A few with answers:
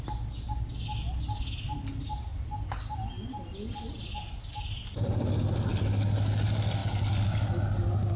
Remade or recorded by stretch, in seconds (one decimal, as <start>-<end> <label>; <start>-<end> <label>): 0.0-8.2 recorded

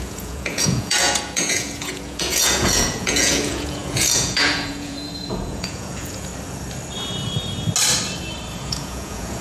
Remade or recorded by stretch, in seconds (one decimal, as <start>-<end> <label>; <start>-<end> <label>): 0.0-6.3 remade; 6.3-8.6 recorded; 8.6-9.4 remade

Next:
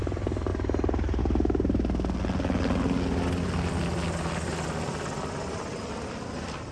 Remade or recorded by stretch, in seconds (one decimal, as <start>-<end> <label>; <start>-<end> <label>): 0.0-6.7 recorded